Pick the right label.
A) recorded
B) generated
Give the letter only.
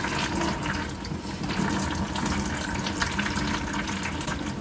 A